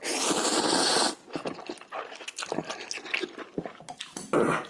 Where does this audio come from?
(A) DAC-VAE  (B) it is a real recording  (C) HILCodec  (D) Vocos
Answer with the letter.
B